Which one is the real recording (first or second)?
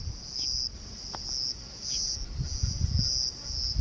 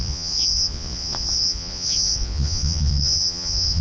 first